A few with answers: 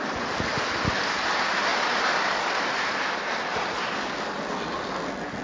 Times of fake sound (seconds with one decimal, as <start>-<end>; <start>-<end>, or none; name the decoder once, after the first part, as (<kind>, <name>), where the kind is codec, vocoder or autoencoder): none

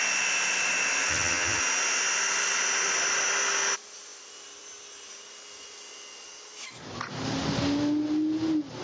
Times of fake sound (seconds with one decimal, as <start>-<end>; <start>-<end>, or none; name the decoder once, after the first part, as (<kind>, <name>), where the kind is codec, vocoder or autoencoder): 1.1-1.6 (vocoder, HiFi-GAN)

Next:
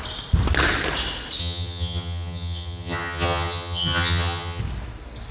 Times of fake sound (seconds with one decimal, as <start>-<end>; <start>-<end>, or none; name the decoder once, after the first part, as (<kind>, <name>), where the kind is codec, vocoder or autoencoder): 1.4-4.6 (vocoder, HiFi-GAN)

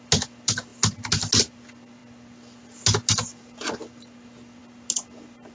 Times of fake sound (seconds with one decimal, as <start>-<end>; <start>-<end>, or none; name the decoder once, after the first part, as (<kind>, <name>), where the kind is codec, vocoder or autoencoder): none